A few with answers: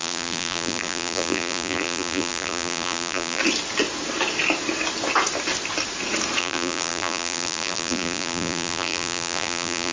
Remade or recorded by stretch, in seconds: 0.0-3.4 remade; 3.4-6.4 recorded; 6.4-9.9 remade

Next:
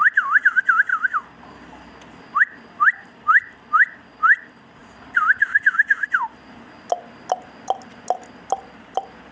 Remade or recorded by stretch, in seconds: 0.0-9.3 recorded